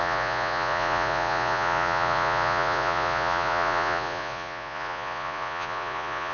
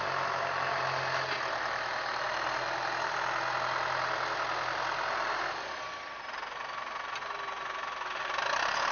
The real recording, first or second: second